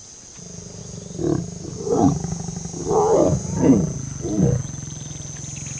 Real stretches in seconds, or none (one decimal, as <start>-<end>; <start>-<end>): 0.0-5.8